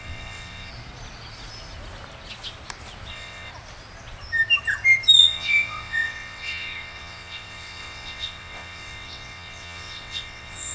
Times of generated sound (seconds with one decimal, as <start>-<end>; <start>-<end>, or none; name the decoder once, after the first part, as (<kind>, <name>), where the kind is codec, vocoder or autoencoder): 0.0-0.7 (vocoder, WaveNeXt); 3.1-3.5; 5.2-10.7

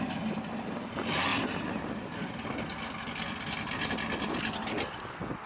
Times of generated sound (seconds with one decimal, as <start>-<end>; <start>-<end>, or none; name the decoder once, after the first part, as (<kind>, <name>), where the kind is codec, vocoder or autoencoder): none

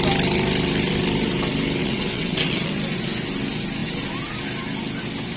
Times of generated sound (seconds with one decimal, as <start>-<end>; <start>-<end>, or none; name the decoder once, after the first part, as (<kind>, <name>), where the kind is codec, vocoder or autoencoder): 1.8-2.7 (vocoder, WaveNeXt)

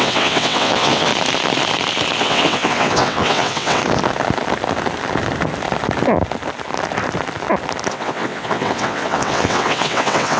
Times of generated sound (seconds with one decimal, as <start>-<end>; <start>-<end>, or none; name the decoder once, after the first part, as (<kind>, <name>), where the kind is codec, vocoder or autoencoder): 0.0-1.1 (vocoder, WaveNeXt); 2.2-3.8; 7.9-10.4

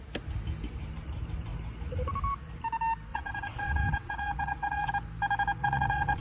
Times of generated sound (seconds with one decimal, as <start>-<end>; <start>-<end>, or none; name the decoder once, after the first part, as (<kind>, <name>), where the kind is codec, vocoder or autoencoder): 3.1-4.9 (vocoder, WaveNeXt); 5.6-6.2